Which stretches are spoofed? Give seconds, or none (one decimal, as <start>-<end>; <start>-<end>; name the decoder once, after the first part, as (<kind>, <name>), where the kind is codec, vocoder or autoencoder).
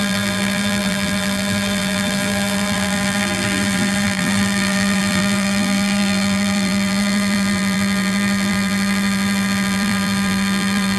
0.0-11.0 (vocoder, BigVGAN v2)